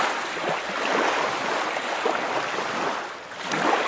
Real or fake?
real